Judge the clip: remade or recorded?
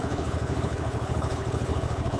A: remade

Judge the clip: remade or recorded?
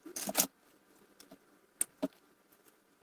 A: recorded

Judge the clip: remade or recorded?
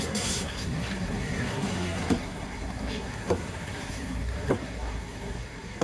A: remade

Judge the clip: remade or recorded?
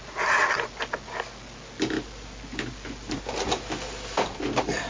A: recorded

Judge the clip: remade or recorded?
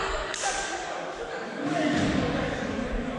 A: remade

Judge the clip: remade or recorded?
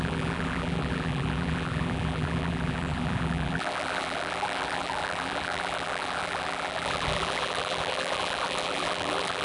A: remade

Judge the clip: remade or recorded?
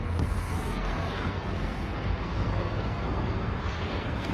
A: remade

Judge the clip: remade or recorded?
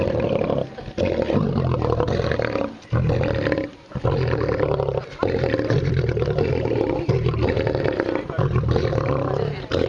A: recorded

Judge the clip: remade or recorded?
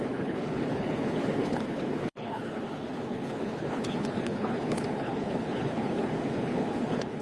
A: remade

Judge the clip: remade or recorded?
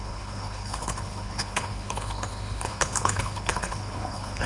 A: remade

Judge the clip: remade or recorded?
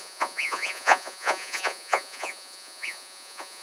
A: remade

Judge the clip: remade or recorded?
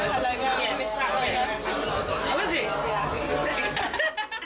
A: recorded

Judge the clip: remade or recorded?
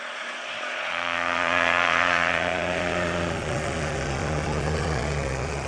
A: remade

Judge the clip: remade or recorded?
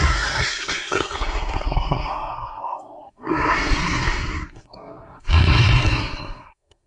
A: remade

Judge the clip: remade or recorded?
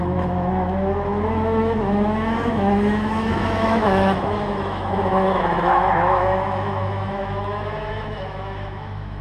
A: remade